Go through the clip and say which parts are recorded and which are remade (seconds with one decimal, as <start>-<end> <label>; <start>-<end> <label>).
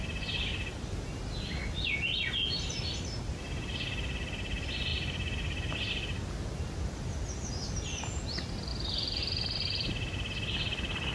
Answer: 0.0-8.7 recorded; 8.7-9.2 remade; 9.2-11.1 recorded